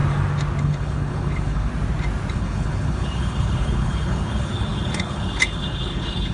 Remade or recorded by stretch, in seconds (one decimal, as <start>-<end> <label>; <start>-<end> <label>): 0.0-0.6 recorded; 0.6-1.7 remade; 1.7-2.3 recorded; 2.3-6.3 remade